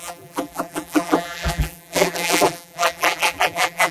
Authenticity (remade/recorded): remade